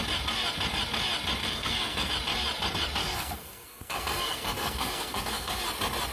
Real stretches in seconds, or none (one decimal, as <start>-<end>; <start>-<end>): 0.0-1.4; 2.1-3.0; 5.6-6.1

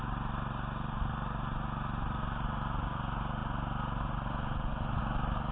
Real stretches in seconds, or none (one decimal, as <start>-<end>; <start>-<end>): 0.0-5.5

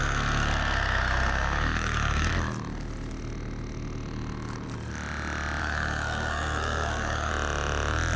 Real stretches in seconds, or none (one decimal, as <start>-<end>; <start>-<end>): 2.3-5.6; 7.3-8.2

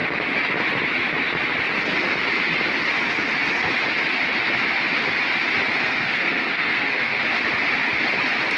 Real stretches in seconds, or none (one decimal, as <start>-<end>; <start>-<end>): 0.0-5.7; 7.2-8.6

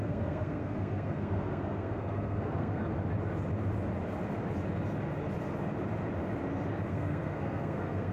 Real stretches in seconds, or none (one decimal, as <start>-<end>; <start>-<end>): 2.8-6.9

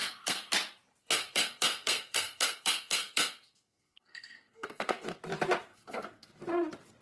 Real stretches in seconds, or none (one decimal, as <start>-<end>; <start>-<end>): 0.5-1.0; 5.2-5.7; 6.3-7.0